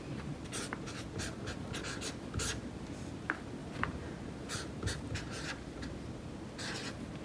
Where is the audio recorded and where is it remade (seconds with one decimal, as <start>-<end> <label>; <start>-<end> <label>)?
0.0-3.6 recorded; 3.6-4.5 remade; 4.5-7.2 recorded